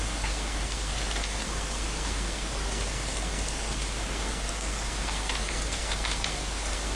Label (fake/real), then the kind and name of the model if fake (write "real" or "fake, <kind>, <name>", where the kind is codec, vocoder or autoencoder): fake, codec, SNAC